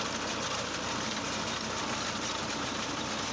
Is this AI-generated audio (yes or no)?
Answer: no